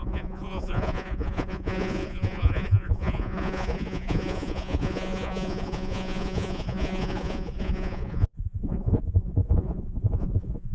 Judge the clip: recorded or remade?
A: remade